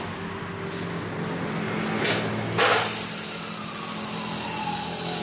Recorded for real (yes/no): yes